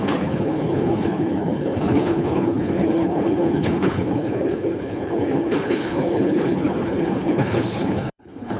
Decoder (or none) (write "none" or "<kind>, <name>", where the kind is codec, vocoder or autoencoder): codec, HILCodec